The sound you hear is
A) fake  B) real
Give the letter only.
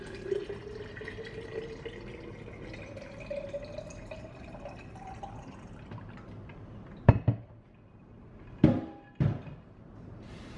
B